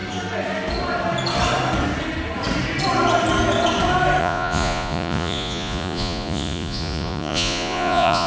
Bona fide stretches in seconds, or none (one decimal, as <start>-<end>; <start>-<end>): 0.0-4.2